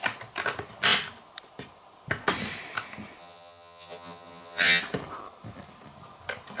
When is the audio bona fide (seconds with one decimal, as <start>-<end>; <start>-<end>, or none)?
0.0-3.2; 4.8-6.6